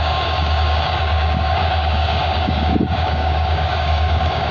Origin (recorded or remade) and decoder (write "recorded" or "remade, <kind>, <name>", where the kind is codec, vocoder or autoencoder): remade, codec, DAC